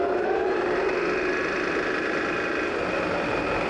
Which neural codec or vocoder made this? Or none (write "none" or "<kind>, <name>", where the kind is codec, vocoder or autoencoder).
none